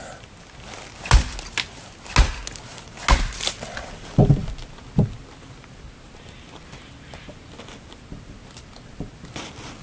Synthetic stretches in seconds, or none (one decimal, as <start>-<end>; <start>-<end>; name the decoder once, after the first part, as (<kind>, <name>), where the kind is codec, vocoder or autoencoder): none